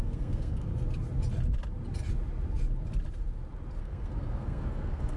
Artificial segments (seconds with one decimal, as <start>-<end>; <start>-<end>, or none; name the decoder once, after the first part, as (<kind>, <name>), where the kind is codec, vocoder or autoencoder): 0.0-0.7 (codec, SNAC); 3.8-5.2